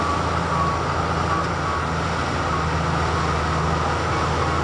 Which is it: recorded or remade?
recorded